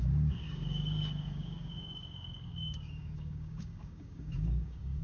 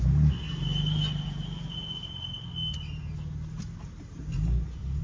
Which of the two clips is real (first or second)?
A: second